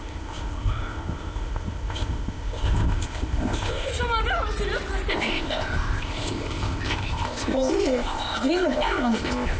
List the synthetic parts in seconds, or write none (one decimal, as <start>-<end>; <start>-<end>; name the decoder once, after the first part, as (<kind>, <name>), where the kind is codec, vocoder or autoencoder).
0.0-3.9 (codec, ZipCodec); 5.1-9.6